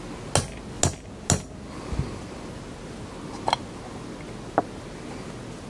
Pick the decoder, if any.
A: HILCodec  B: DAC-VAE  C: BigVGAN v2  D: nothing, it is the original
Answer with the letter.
D